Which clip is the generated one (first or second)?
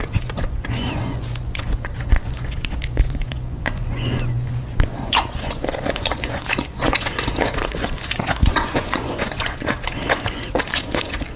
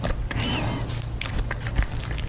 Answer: first